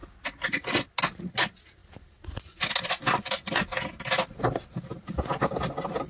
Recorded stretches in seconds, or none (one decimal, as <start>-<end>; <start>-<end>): 0.0-6.1